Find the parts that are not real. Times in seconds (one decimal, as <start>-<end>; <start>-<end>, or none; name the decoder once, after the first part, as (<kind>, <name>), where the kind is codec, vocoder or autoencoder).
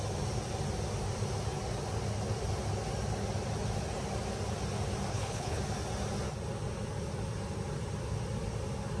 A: 5.1-5.6 (codec, HILCodec)